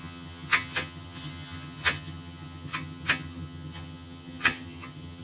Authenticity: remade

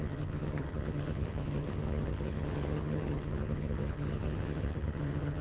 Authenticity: remade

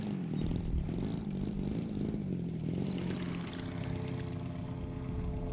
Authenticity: recorded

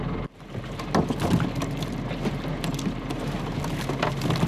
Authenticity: recorded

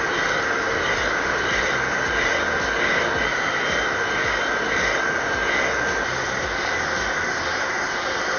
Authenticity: recorded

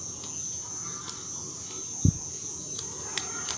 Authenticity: recorded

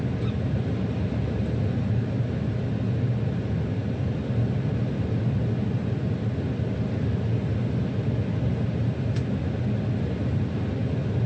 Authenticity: recorded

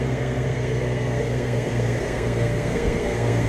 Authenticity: remade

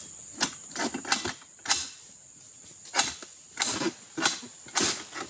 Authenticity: recorded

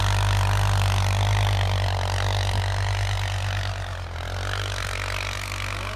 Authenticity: recorded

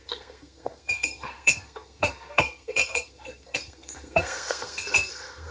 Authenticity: remade